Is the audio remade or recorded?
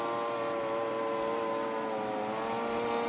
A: recorded